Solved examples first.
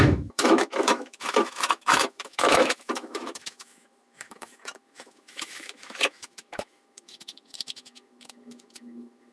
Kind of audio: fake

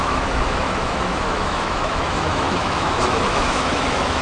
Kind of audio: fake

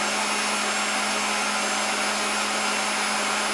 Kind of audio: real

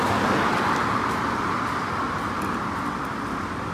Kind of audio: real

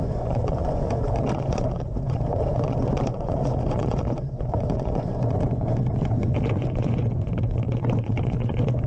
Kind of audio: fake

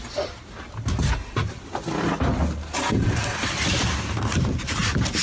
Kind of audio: real